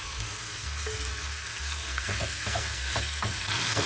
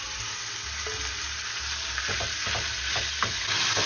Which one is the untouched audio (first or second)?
second